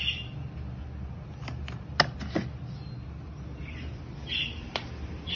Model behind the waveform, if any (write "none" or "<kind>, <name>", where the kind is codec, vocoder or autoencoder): none